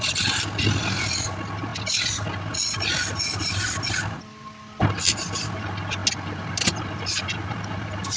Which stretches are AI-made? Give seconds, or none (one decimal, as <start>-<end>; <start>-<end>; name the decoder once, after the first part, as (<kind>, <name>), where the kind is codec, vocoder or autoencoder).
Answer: none

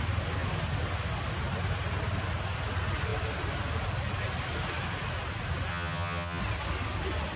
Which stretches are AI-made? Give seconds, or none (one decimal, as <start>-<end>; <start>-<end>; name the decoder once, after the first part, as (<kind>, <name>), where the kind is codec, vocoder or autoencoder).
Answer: 5.7-6.4 (vocoder, HiFi-GAN)

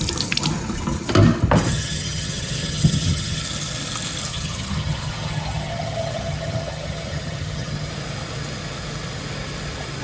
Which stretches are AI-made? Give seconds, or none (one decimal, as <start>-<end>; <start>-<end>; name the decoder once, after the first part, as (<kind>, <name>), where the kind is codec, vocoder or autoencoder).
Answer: 1.7-3.4 (vocoder, HiFi-GAN); 4.3-7.9

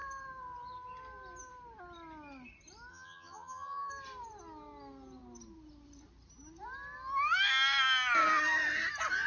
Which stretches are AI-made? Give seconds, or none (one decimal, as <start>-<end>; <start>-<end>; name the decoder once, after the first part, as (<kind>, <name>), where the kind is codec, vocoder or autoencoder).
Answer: 2.9-3.9 (vocoder, HiFi-GAN)

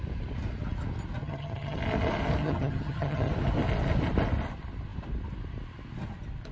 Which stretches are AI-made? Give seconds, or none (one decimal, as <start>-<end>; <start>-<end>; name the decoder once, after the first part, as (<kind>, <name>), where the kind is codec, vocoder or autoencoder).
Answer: 1.2-1.8 (vocoder, HiFi-GAN); 2.4-3.3

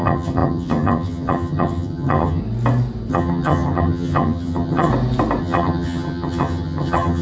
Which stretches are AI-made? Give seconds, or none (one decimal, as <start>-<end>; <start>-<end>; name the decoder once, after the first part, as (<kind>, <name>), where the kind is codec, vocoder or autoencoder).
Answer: 0.0-2.4 (vocoder, HiFi-GAN); 3.1-4.9; 5.4-7.2

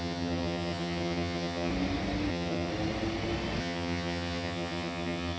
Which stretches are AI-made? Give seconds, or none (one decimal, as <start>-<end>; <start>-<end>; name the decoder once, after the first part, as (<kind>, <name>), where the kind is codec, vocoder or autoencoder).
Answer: 0.0-1.7 (vocoder, HiFi-GAN); 2.3-2.7; 3.6-5.4